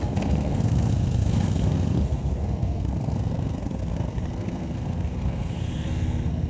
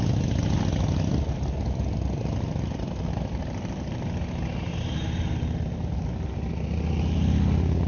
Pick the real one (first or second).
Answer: second